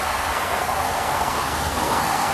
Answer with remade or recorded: remade